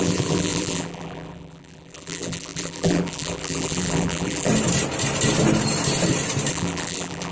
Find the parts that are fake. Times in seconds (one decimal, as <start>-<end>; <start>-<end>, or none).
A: 0.0-4.5; 6.5-7.3